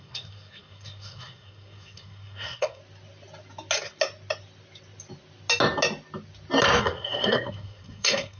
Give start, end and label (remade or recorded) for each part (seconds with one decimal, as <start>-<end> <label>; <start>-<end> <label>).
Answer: 0.0-2.8 remade; 2.8-6.8 recorded; 6.8-8.4 remade